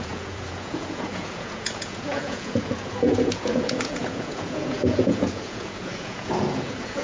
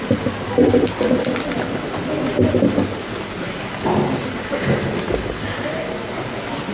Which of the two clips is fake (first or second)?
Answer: first